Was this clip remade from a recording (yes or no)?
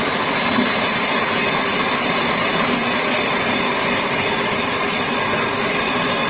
no